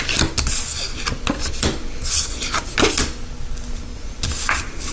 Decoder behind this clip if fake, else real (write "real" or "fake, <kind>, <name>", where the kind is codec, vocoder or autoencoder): real